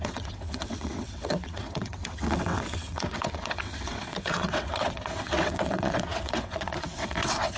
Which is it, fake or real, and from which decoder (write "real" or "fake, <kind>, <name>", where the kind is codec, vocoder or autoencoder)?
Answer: fake, vocoder, WaveNeXt